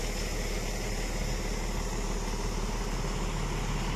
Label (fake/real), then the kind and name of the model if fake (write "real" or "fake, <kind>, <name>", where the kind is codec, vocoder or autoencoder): real